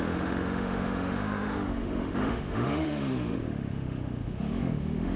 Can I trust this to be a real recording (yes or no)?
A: no